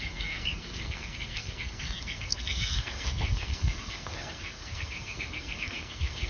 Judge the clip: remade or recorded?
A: remade